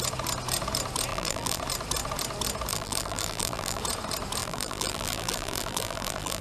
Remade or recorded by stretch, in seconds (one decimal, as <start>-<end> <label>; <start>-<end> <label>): 0.0-1.1 recorded; 1.1-1.6 remade; 1.6-2.7 recorded; 2.7-3.8 remade; 3.8-4.4 recorded; 4.4-6.4 remade